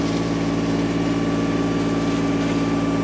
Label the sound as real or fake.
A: real